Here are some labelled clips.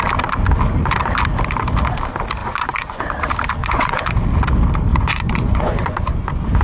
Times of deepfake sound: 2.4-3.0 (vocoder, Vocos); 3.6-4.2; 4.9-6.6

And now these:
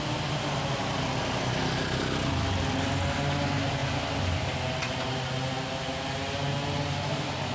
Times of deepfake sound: none

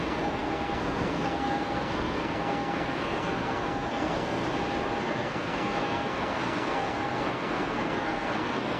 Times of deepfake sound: 0.0-4.4 (codec, SNAC); 5.0-8.8

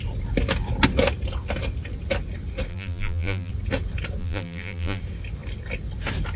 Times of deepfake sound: 2.7-3.5 (vocoder, BigVGAN v2); 4.2-5.0

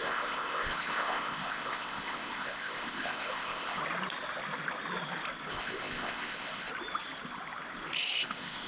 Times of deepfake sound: 0.0-3.8 (codec, ZipCodec); 5.5-6.7; 8.2-8.7

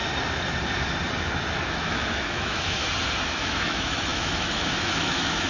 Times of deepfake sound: 1.7-2.8 (autoencoder, DAC-VAE); 3.3-5.5

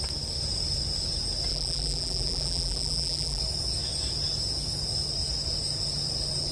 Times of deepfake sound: 1.5-3.4 (vocoder, BigVGAN v2)